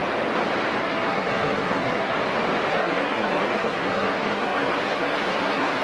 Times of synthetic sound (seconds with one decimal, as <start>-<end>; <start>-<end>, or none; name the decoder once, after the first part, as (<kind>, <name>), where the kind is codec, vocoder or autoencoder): 0.8-2.2 (codec, SNAC); 2.7-5.8